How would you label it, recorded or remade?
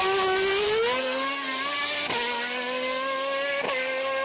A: recorded